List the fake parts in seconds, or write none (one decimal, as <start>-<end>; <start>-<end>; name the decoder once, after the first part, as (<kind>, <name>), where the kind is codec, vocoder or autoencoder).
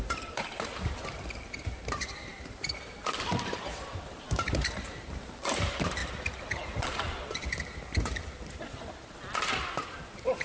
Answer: 0.0-6.0 (vocoder, BigVGAN v2); 10.0-10.4